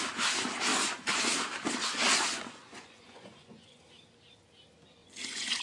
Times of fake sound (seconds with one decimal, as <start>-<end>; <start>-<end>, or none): 0.7-1.2; 2.3-3.8; 5.0-5.6